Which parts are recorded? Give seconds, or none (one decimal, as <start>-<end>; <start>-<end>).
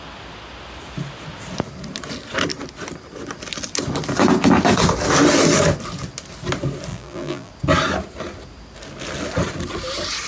0.0-6.9; 7.5-10.3